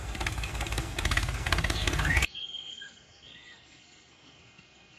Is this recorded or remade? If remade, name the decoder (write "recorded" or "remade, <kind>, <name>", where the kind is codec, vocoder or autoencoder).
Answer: remade, codec, SNAC